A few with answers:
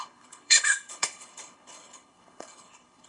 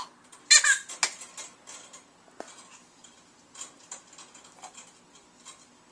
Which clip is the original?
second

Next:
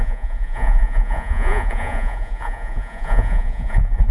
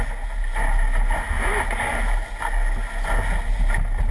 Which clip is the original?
second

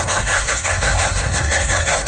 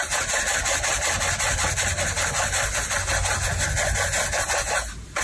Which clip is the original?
second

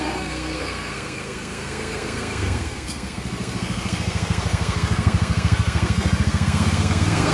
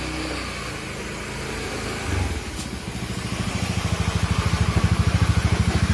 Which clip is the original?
second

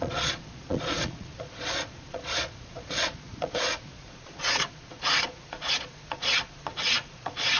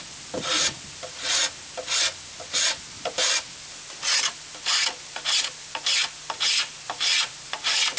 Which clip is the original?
second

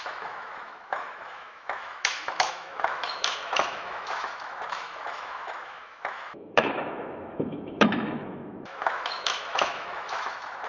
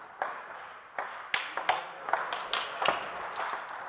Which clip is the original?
second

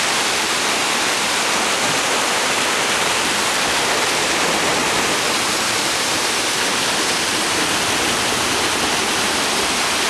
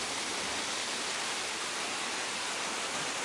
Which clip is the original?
second